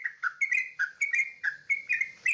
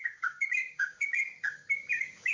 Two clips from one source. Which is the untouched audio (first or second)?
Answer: first